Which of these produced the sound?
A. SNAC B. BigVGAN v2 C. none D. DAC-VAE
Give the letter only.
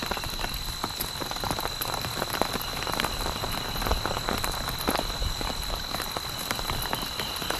C